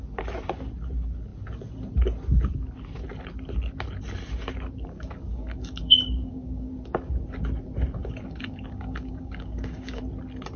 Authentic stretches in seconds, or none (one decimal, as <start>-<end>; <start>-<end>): 0.0-5.3; 6.7-8.0; 10.0-10.6

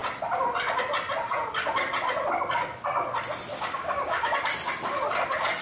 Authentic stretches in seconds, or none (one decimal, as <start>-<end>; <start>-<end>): 0.0-3.5; 4.4-5.6

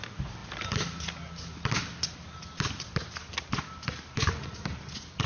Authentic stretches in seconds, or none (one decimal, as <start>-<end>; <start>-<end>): 0.0-5.3

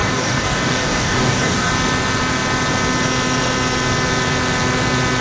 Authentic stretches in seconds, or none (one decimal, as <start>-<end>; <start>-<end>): 1.7-5.2

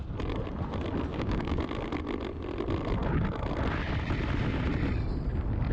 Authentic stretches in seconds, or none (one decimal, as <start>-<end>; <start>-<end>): 0.0-1.1; 1.6-5.7